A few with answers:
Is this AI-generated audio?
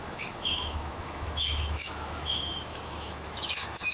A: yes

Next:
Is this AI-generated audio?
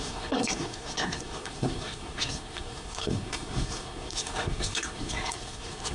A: yes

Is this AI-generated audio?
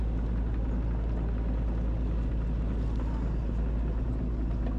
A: no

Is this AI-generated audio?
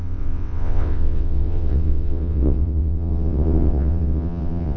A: yes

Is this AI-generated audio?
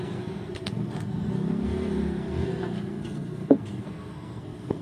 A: yes